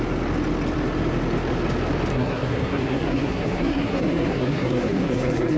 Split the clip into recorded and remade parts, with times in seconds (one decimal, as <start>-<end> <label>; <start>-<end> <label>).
0.0-2.1 recorded; 2.1-5.6 remade